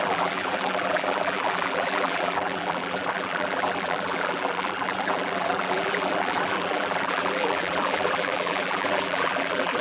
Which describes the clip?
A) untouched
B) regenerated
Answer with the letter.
B